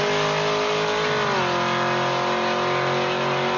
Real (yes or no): yes